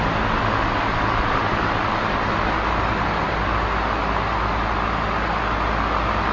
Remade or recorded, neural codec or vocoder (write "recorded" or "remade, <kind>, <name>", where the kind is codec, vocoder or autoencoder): recorded